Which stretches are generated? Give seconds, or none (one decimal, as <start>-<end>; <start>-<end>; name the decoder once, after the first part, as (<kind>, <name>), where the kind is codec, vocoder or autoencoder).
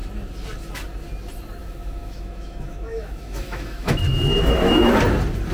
1.6-4.9 (autoencoder, DAC-VAE)